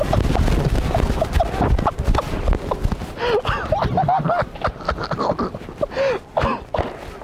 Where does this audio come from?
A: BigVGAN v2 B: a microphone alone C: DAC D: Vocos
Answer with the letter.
B